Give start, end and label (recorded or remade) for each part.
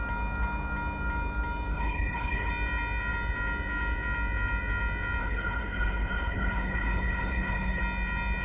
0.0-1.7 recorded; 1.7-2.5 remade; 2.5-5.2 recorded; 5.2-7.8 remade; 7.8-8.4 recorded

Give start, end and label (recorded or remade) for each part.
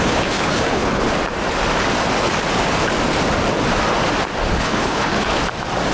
0.0-1.0 remade; 1.0-4.5 recorded; 4.5-5.4 remade; 5.4-5.9 recorded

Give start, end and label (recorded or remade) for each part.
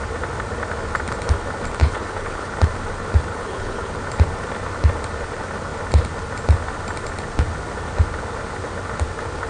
0.0-1.8 recorded; 1.8-2.5 remade; 2.5-3.3 recorded; 3.3-3.9 remade; 3.9-9.5 recorded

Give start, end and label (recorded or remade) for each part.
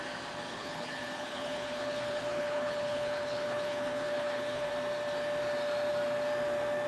0.0-0.6 recorded; 0.6-4.7 remade; 4.7-6.9 recorded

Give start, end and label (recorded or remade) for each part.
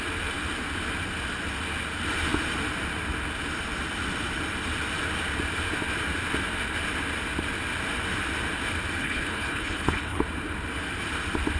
0.0-9.0 recorded; 9.0-10.2 remade; 10.2-11.6 recorded